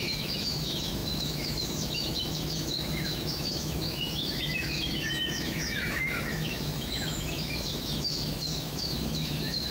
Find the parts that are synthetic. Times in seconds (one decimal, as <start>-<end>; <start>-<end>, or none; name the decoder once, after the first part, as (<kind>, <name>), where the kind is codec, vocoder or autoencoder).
0.0-9.7 (autoencoder, DAC-VAE)